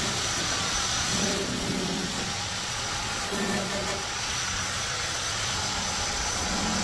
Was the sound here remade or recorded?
remade